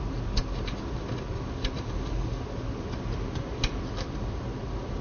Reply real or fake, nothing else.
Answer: real